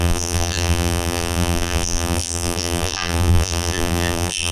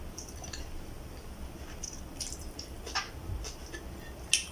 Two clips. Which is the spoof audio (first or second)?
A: first